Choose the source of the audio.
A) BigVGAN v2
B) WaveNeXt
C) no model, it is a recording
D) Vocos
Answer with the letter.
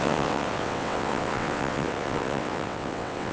B